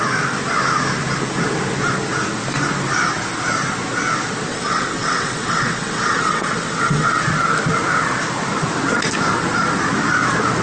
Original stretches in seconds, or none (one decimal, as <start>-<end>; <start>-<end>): 0.0-4.5; 7.2-10.6